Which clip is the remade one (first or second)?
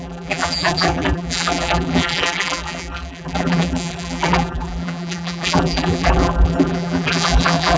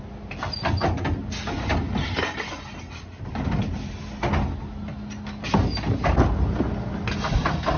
first